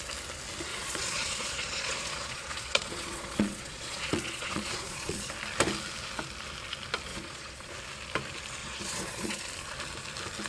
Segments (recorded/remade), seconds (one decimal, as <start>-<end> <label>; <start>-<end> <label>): 0.0-0.7 recorded; 0.7-5.3 remade; 5.3-7.1 recorded; 7.1-7.7 remade; 7.7-8.6 recorded; 8.6-9.4 remade; 9.4-10.5 recorded